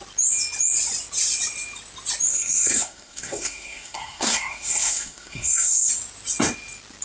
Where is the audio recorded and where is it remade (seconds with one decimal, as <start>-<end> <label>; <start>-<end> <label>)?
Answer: 0.0-2.3 recorded; 2.3-5.9 remade; 5.9-7.0 recorded